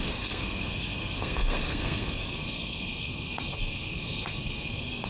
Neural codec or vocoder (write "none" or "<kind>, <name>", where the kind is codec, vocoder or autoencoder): codec, SNAC